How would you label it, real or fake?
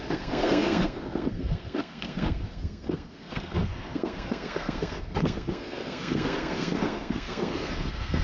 fake